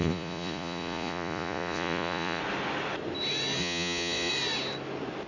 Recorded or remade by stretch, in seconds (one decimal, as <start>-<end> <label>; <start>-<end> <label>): 0.0-2.4 remade; 2.4-3.6 recorded; 3.6-4.3 remade; 4.3-5.3 recorded